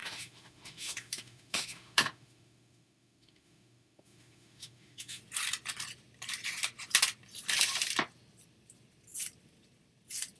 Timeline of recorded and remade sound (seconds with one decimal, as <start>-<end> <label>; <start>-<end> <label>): 0.0-5.2 remade; 5.2-10.4 recorded